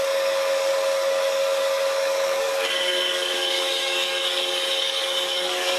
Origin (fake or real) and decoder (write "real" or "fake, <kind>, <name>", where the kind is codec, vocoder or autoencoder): fake, codec, DAC